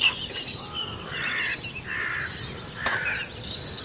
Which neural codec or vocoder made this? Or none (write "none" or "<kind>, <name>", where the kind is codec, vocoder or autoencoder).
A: none